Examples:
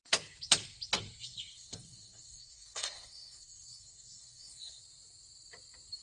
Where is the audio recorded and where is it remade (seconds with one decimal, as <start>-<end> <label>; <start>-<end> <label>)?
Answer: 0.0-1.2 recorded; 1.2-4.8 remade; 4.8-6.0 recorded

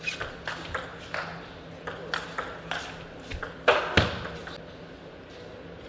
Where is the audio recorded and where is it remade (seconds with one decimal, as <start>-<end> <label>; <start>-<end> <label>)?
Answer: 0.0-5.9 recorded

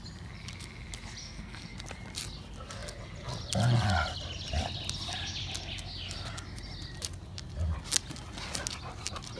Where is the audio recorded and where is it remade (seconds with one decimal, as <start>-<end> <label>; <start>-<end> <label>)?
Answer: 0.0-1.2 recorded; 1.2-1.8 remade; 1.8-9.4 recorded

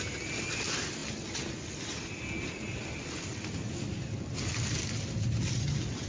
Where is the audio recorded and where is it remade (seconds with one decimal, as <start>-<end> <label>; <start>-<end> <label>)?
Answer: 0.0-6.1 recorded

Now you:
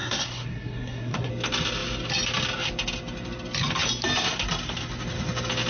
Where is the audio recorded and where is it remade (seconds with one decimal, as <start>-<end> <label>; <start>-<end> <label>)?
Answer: 0.0-1.3 remade; 1.3-5.7 recorded

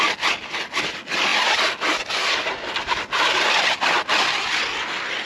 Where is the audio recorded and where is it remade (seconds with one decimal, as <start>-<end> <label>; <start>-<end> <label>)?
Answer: 0.0-5.3 recorded